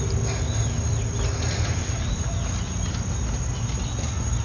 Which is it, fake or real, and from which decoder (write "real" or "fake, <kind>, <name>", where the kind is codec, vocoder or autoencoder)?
real